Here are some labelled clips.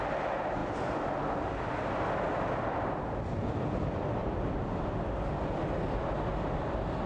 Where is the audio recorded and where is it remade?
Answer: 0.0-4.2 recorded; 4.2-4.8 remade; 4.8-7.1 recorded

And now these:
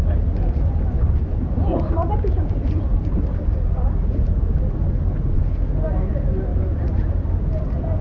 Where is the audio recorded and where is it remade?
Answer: 0.0-3.1 recorded; 3.1-3.9 remade; 3.9-6.5 recorded; 6.5-7.1 remade; 7.1-8.0 recorded

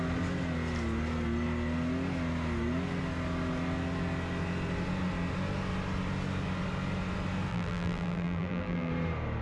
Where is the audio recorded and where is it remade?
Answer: 0.0-7.5 recorded; 7.5-8.9 remade; 8.9-9.4 recorded

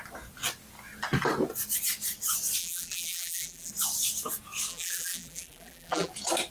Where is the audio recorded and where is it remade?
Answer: 0.0-2.6 recorded; 2.6-3.7 remade; 3.7-4.7 recorded; 4.7-6.1 remade; 6.1-6.5 recorded

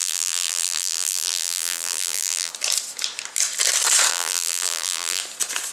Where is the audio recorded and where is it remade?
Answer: 0.0-2.5 remade; 2.5-4.1 recorded; 4.1-5.2 remade; 5.2-5.7 recorded